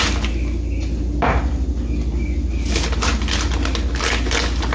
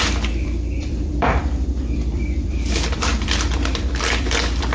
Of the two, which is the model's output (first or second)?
second